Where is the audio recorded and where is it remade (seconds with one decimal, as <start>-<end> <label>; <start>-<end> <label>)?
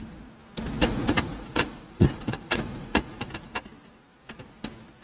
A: 0.0-0.8 recorded; 0.8-3.3 remade; 3.3-5.0 recorded